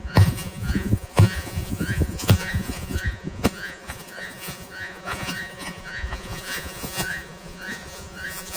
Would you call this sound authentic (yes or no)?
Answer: no